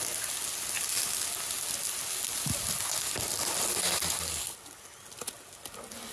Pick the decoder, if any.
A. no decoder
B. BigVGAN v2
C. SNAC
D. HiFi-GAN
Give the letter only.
A